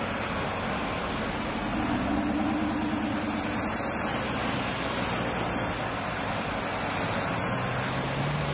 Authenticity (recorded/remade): recorded